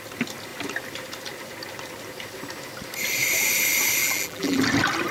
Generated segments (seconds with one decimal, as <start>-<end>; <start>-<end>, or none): 4.0-4.6